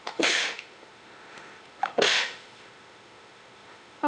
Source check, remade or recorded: remade